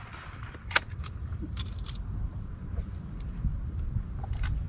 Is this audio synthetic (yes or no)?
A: yes